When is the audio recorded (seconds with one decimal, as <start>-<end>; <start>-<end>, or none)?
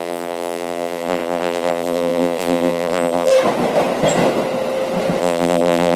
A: 3.3-5.2